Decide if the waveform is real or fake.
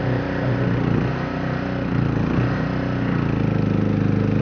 real